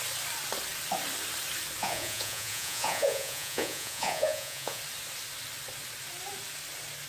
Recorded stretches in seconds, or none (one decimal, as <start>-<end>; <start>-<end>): 0.0-1.8; 4.8-7.1